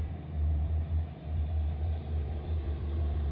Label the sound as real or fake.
fake